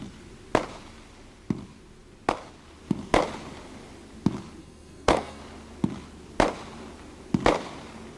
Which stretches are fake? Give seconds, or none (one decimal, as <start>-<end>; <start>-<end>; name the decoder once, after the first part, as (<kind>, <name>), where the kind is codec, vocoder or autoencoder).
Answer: 4.6-5.4 (codec, SNAC)